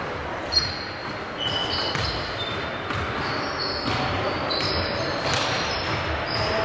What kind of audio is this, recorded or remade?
recorded